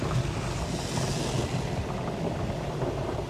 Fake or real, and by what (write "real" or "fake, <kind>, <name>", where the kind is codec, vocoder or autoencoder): real